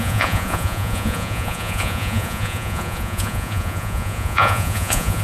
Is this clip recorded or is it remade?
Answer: remade